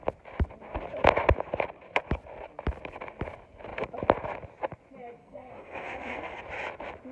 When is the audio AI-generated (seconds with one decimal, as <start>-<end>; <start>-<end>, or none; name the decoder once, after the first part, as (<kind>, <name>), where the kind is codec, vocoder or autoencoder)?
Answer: 5.2-6.4 (codec, SNAC)

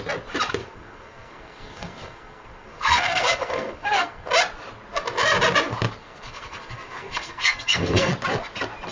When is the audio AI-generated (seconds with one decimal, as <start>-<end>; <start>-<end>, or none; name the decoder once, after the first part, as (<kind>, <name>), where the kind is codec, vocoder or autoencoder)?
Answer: 0.6-4.3 (codec, SNAC); 6.0-8.1

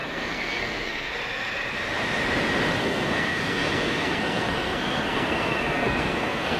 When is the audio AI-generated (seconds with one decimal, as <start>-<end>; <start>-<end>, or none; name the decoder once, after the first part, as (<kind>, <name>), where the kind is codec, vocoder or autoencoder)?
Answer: 0.0-1.1 (codec, SNAC); 2.8-6.6